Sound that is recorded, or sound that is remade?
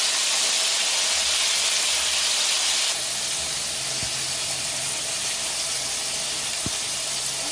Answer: recorded